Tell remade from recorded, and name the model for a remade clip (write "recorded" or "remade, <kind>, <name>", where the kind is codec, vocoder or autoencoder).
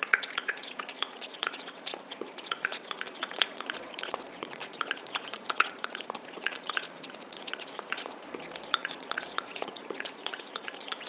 remade, vocoder, Vocos